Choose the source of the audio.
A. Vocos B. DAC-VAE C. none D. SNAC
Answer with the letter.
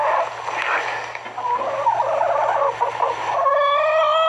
C